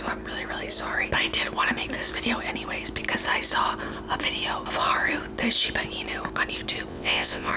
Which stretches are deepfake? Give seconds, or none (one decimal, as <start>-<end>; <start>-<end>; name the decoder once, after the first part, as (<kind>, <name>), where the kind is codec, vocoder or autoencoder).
6.9-7.6 (vocoder, WaveNeXt)